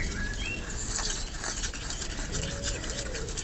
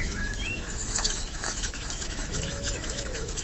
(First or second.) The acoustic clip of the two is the first